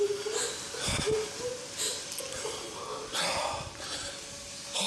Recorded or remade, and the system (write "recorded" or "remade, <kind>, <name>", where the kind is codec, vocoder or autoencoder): recorded